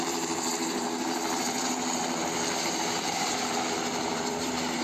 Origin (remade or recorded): remade